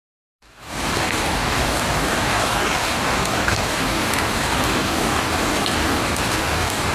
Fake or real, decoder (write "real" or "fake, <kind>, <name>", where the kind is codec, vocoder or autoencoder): fake, codec, DAC